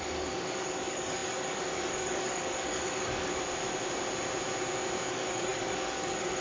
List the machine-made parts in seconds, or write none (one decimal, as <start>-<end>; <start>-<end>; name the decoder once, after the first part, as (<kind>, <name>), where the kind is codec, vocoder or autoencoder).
0.0-3.3 (codec, DAC); 5.1-6.4